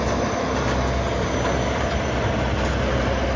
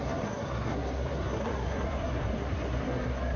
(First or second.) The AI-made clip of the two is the second